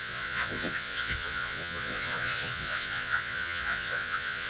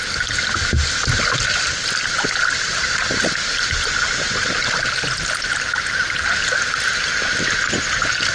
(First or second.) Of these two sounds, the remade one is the first